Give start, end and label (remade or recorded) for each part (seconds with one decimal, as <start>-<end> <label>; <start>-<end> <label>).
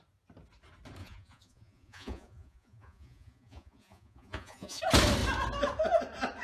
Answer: 0.0-1.0 recorded; 1.0-4.8 remade; 4.8-6.4 recorded